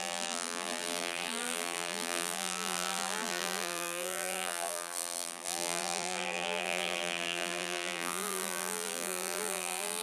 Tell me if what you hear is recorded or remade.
remade